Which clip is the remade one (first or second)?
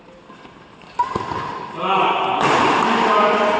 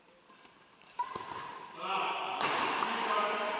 second